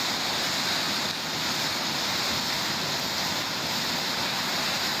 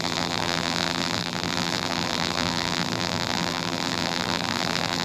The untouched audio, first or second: first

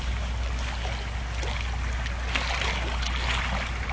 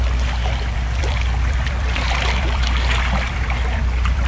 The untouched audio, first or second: first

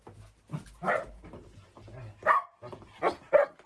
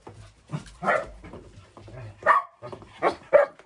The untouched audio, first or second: first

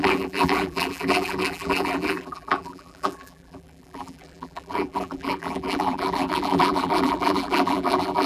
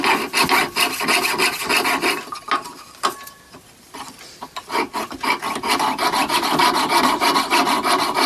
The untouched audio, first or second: second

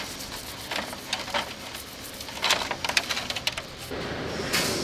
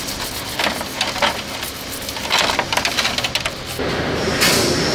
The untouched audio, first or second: second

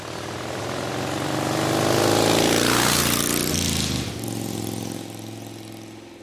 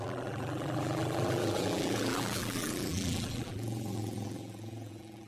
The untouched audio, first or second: first